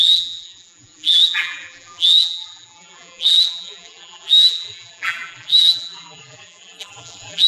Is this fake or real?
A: fake